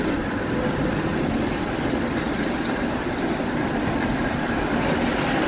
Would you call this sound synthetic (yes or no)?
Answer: no